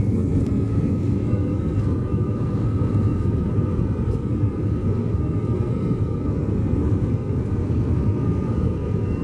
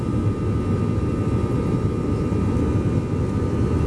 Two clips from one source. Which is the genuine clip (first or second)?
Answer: second